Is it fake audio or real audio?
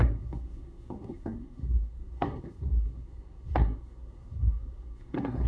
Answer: fake